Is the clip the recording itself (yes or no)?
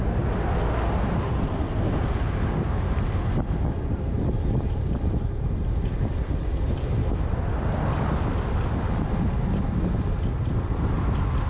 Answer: yes